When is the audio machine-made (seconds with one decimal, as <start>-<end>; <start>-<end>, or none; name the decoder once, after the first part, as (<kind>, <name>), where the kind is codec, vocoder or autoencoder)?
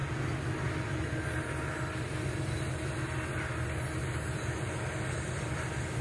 none